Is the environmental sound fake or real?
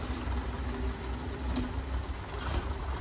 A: real